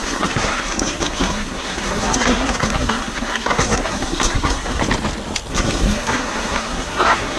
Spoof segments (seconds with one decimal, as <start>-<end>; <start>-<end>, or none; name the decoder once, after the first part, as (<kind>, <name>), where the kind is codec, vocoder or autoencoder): 0.0-4.8 (codec, SNAC); 5.5-7.4